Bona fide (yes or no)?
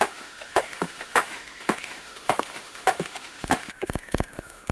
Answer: no